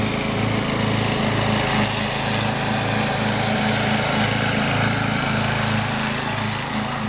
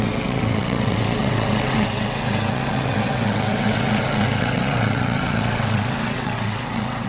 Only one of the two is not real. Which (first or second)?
second